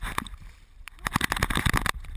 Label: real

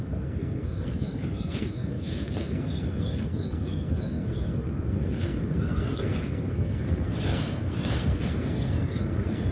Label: fake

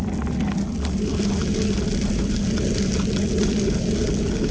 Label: real